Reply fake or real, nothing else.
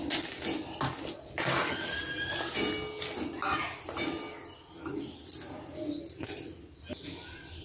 real